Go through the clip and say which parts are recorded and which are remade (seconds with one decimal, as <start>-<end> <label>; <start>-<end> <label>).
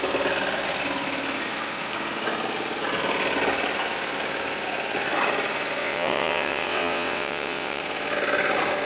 0.0-5.8 recorded; 5.8-7.8 remade; 7.8-8.8 recorded